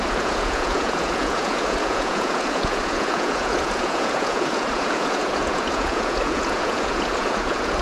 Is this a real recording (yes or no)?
no